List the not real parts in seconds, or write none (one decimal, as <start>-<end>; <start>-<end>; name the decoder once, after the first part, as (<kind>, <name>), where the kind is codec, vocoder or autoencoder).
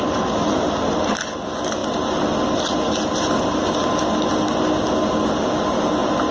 none